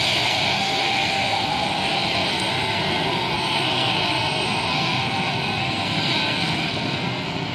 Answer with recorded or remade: remade